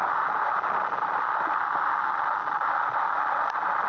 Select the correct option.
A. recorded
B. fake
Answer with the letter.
A